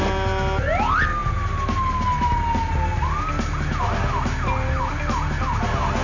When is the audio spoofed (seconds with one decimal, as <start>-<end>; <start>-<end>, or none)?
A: none